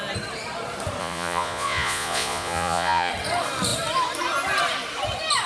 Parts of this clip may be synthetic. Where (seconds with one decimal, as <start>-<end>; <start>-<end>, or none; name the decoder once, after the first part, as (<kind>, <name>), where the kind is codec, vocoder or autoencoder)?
1.0-3.1 (vocoder, Vocos)